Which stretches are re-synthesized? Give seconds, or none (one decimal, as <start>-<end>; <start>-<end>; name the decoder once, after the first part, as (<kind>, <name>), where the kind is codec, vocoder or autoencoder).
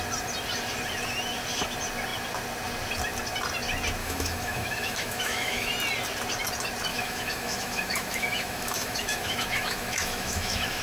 4.0-5.7 (autoencoder, DAC-VAE); 6.9-10.8